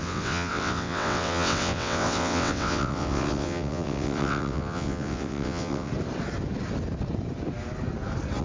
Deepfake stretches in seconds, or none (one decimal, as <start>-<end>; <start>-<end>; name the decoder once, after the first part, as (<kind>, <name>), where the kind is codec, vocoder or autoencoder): 0.0-5.9 (vocoder, WaveNeXt)